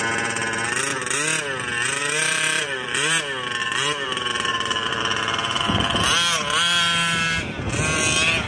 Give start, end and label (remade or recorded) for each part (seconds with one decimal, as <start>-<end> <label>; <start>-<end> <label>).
0.0-2.0 recorded; 2.0-3.2 remade; 3.2-3.6 recorded; 3.6-6.0 remade; 6.0-8.5 recorded